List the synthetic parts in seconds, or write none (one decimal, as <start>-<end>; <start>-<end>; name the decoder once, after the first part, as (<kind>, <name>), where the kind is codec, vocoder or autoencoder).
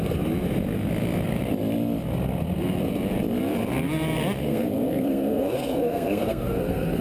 4.4-7.0 (codec, SNAC)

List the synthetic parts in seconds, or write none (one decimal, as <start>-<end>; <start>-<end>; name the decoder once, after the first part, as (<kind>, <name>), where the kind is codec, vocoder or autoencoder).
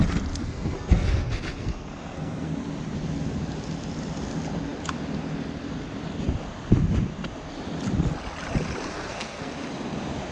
0.4-2.6 (codec, SNAC); 8.9-9.5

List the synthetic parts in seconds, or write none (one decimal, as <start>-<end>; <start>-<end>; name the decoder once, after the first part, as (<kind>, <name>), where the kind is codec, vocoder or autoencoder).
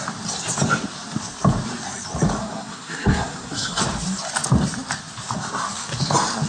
2.4-3.8 (codec, SNAC)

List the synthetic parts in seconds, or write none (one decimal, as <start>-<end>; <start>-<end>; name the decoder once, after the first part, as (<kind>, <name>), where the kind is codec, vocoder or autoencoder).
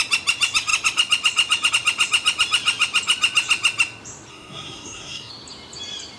4.3-5.3 (codec, SNAC)